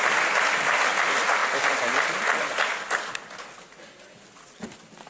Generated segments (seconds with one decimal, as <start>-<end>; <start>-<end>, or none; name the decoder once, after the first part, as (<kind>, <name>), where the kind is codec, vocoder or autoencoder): none